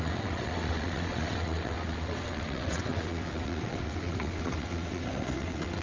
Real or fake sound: fake